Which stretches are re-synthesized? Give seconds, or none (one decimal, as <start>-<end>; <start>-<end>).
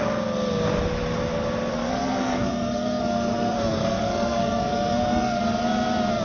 1.7-5.4